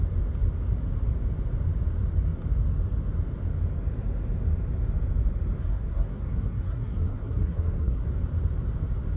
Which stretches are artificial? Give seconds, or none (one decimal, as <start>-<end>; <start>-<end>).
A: 5.6-8.1